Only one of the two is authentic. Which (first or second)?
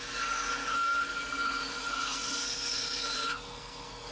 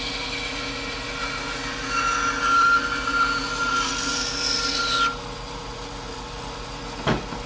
second